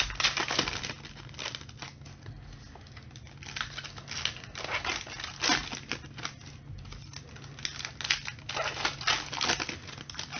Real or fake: real